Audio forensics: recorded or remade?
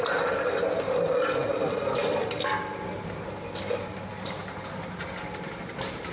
recorded